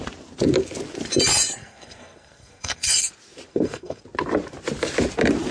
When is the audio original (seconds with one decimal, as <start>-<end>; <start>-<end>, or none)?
0.0-1.6; 3.1-3.5; 4.0-5.5